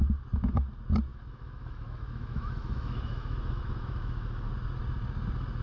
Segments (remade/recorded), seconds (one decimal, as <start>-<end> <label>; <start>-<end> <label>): 0.0-1.1 recorded; 1.1-4.5 remade; 4.5-5.6 recorded